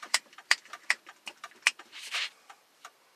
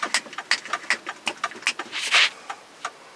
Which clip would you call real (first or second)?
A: second